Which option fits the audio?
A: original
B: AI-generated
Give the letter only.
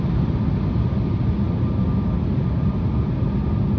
A